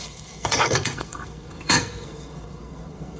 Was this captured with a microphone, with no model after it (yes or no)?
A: no